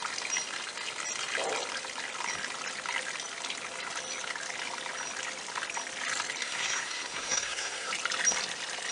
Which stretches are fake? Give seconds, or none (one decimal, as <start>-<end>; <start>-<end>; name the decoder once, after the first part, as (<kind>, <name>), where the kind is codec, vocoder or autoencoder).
6.4-7.9 (codec, SNAC)

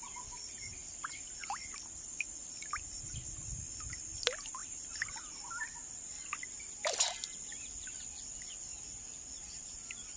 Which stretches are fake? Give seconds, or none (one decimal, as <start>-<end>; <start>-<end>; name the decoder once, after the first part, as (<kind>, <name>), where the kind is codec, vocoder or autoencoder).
none